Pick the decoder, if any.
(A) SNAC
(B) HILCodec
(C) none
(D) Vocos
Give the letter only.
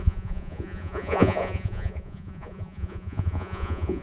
D